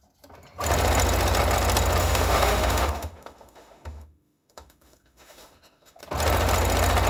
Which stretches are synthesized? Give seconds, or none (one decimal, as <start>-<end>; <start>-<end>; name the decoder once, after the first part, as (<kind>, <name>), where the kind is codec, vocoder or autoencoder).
2.0-6.0 (autoencoder, DAC-VAE)